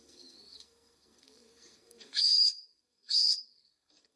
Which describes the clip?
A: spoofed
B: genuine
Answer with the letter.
A